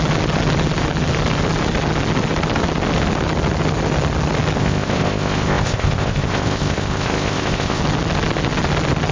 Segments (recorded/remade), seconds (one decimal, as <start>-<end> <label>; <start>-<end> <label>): 0.0-4.6 recorded; 4.6-7.8 remade; 7.8-9.1 recorded